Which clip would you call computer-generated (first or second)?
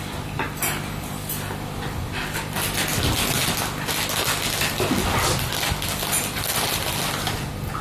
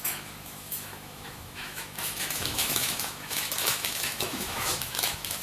second